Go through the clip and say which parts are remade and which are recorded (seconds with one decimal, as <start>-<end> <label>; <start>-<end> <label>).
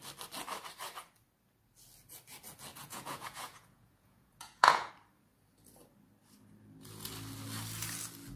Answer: 0.0-2.7 recorded; 2.7-4.9 remade; 4.9-8.4 recorded